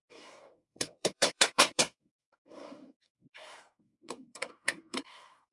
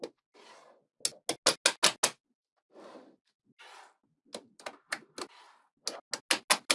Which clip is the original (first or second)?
second